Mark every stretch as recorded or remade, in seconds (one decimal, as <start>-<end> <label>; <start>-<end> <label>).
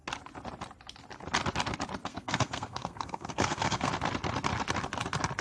0.0-2.1 recorded; 2.1-3.9 remade; 3.9-5.4 recorded